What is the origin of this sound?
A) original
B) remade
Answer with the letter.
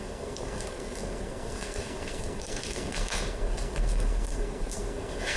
B